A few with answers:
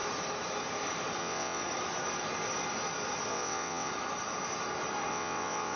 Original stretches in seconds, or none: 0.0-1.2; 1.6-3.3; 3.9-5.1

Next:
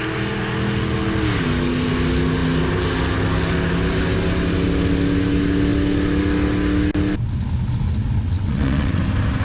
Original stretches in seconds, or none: 0.0-8.2; 9.0-9.4

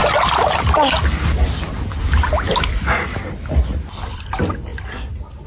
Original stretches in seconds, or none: 0.0-5.5

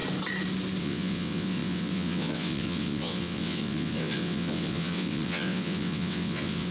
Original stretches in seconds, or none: 0.0-0.8

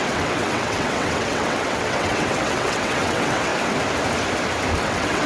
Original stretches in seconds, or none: 3.5-4.8